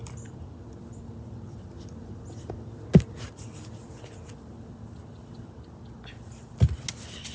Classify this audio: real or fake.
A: real